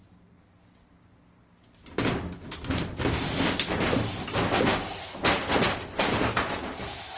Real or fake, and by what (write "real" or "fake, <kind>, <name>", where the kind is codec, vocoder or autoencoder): real